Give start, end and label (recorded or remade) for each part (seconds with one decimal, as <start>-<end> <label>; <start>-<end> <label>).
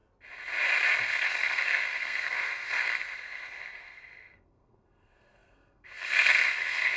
0.0-1.0 recorded; 1.0-7.0 remade